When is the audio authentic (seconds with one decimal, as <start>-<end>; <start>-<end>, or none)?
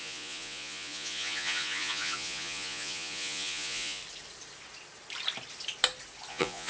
4.0-6.3